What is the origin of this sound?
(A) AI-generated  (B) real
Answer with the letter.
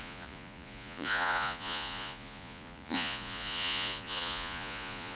A